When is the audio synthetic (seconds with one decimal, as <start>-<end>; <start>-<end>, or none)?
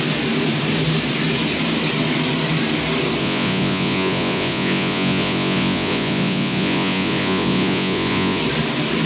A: 3.2-8.4